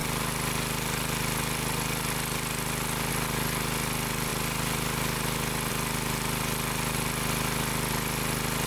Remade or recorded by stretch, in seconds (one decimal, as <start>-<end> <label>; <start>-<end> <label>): 0.0-8.7 recorded